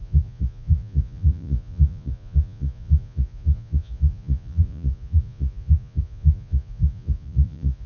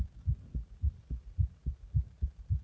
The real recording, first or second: second